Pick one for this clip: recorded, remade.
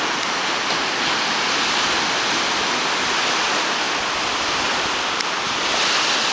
recorded